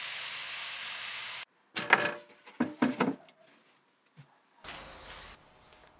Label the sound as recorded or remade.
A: recorded